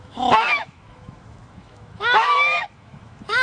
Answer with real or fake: fake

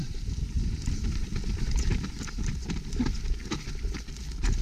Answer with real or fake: real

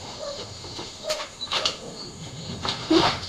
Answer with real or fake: fake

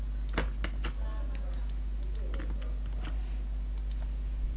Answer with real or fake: real